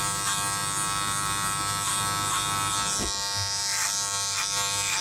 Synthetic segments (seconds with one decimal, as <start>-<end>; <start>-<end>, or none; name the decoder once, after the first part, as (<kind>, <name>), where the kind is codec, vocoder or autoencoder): none